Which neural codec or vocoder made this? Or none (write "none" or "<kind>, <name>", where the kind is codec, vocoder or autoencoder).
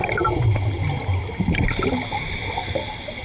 vocoder, BigVGAN v2